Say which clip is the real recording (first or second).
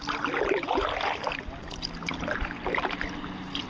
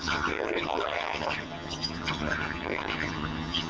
first